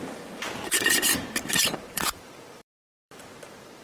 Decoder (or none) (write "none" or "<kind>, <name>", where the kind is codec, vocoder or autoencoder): vocoder, BigVGAN v2